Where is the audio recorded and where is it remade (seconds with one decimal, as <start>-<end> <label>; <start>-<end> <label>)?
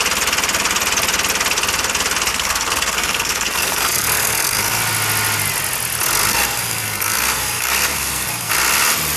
0.0-2.3 recorded; 2.3-4.8 remade; 4.8-6.3 recorded; 6.3-8.5 remade; 8.5-9.2 recorded